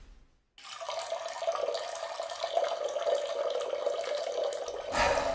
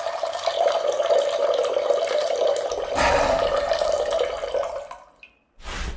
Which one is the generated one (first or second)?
second